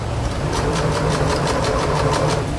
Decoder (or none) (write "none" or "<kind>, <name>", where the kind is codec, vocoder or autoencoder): vocoder, BigVGAN v2